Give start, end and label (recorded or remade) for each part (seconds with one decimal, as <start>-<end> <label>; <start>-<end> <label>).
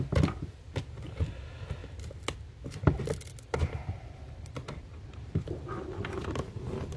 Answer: 0.0-1.8 recorded; 1.8-5.7 remade; 5.7-7.0 recorded